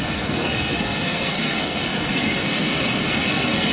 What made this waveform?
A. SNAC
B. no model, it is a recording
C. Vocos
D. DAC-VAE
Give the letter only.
A